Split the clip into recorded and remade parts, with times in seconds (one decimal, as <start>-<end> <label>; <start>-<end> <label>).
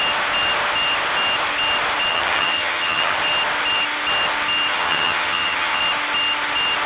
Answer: 0.0-2.1 recorded; 2.1-3.2 remade; 3.2-4.7 recorded; 4.7-5.8 remade; 5.8-6.9 recorded